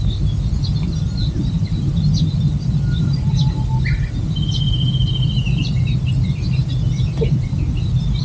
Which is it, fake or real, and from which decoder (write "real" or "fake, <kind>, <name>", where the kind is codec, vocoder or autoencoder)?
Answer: real